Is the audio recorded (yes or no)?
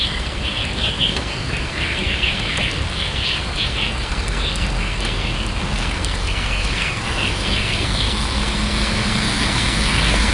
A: no